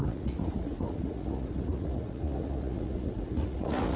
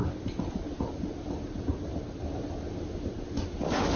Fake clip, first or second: first